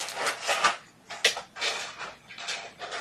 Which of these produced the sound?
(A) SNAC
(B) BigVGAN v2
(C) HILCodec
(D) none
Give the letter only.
D